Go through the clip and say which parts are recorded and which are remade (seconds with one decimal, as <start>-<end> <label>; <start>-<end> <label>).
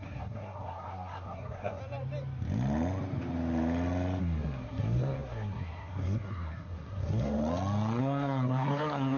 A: 0.0-1.8 remade; 1.8-4.2 recorded; 4.2-7.4 remade; 7.4-8.0 recorded; 8.0-9.2 remade